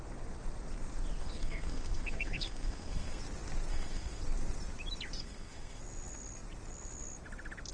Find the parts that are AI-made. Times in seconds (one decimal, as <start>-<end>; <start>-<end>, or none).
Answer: 1.2-3.2; 3.7-4.2; 5.2-5.8